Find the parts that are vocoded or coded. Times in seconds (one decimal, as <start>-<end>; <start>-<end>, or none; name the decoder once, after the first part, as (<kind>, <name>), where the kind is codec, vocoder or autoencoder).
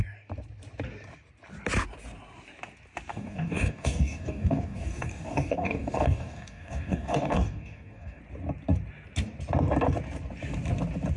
3.1-8.2 (codec, DAC)